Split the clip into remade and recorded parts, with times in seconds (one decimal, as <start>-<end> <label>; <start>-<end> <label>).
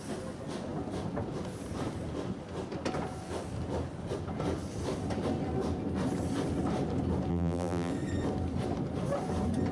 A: 0.0-7.3 recorded; 7.3-7.9 remade; 7.9-9.7 recorded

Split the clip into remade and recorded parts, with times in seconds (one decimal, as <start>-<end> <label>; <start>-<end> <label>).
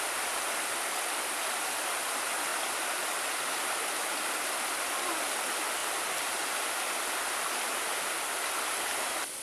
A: 0.0-9.4 recorded